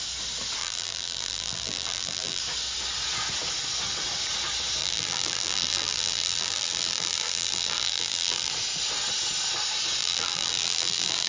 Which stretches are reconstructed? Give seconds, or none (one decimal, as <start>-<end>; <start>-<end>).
0.6-2.4; 4.8-8.5; 10.0-11.3